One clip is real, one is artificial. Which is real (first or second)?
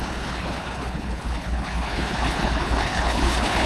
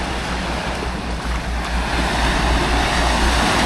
second